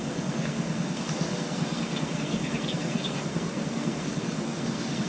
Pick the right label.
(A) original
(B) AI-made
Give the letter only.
B